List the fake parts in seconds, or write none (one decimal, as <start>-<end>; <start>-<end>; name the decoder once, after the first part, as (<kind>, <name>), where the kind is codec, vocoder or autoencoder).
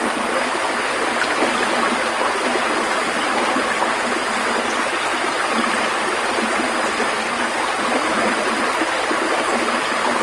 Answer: 5.1-6.7 (vocoder, BigVGAN v2)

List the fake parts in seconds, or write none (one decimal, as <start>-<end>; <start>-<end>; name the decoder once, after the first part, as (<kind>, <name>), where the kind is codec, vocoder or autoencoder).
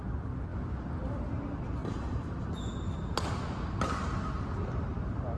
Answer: none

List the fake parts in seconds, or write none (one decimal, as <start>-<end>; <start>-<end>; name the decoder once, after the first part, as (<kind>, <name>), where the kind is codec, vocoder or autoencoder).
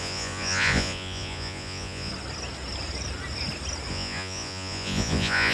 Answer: 0.0-2.1 (vocoder, Vocos); 3.9-5.5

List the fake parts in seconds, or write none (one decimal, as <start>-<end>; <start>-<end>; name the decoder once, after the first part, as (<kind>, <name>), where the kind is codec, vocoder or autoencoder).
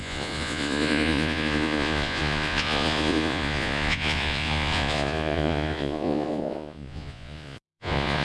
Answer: 0.0-8.2 (vocoder, Vocos)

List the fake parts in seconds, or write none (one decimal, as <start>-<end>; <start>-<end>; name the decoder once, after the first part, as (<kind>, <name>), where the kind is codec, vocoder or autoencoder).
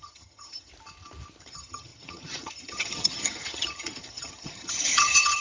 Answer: 0.0-0.7 (vocoder, HiFi-GAN); 1.4-5.4